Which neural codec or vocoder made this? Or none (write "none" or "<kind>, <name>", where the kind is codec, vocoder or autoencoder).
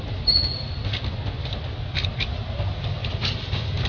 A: none